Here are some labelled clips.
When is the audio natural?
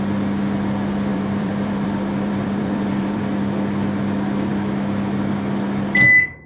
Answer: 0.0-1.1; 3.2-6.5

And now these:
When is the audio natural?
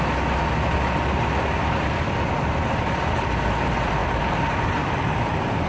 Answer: 0.0-4.0; 4.8-5.7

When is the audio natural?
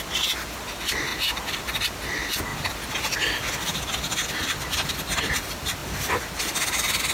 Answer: 0.0-7.1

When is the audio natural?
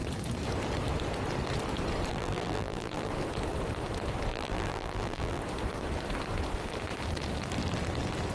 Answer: 0.0-2.1; 3.1-4.3; 5.4-8.3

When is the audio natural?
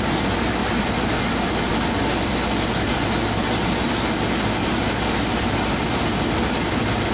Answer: 0.0-7.1